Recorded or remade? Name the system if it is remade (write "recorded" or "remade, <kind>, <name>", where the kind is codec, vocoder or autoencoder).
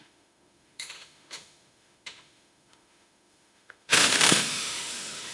remade, autoencoder, DAC-VAE